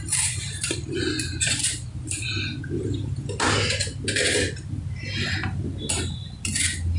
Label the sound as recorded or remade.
recorded